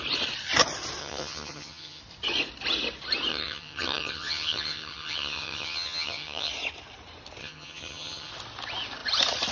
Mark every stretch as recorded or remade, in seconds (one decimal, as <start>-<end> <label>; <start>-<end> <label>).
0.0-1.0 recorded; 1.0-2.0 remade; 2.0-3.3 recorded; 3.3-6.5 remade; 6.5-7.4 recorded; 7.4-8.3 remade; 8.3-9.5 recorded